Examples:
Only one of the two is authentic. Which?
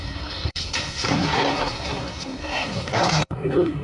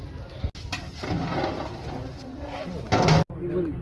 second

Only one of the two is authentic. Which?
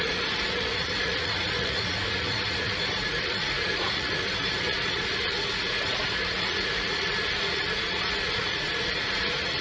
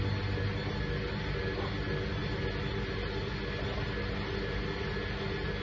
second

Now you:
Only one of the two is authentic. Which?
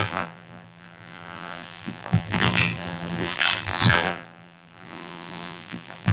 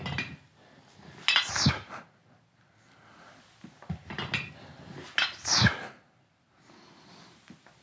second